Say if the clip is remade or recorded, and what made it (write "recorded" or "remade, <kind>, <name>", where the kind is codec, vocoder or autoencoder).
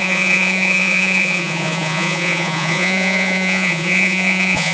remade, vocoder, Vocos